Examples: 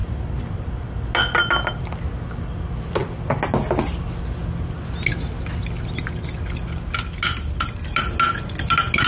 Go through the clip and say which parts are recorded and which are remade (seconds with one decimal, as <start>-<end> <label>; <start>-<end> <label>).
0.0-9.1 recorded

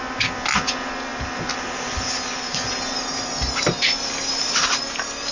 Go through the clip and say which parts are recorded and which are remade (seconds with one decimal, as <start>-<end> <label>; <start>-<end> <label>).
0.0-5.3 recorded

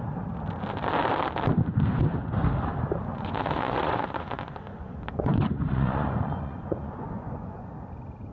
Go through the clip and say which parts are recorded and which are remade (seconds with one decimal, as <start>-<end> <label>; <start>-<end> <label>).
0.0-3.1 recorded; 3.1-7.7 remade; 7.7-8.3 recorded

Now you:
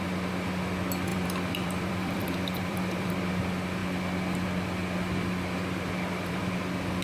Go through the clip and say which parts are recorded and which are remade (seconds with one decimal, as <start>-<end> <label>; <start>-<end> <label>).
0.0-1.1 recorded; 1.1-3.1 remade; 3.1-7.0 recorded